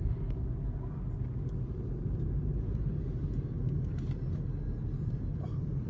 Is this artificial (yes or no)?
no